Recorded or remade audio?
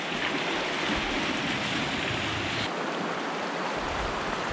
recorded